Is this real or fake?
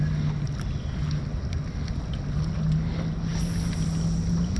real